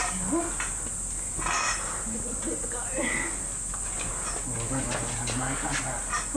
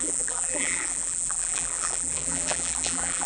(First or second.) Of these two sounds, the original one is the first